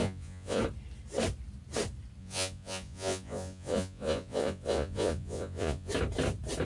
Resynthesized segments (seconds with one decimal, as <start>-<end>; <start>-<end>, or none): 0.0-0.6; 2.2-5.9